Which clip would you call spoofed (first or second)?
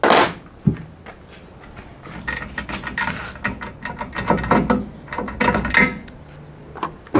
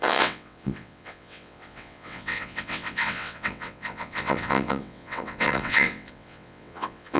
second